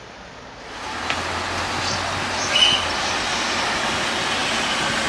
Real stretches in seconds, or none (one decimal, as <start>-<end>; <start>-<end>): 0.0-5.1